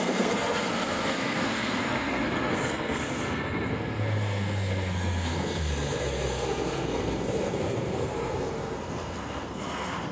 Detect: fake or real fake